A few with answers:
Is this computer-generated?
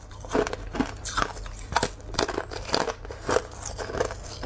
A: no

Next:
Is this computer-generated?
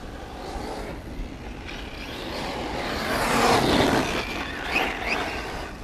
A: no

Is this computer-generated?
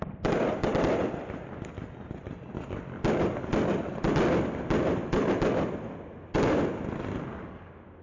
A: no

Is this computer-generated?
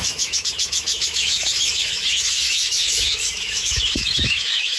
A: yes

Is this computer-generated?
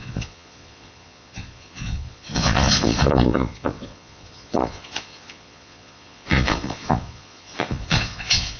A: yes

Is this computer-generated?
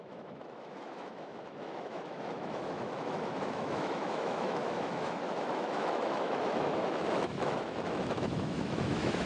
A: yes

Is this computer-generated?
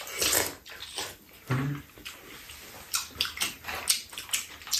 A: no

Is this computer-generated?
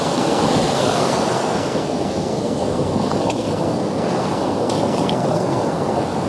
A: yes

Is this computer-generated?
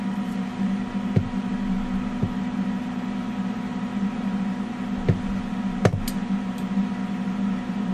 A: no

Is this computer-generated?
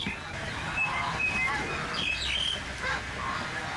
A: no